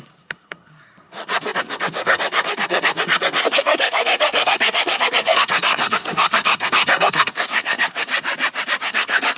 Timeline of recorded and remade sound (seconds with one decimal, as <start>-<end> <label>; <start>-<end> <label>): 0.0-8.1 remade; 8.1-8.8 recorded; 8.8-9.4 remade